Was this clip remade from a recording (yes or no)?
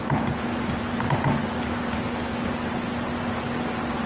no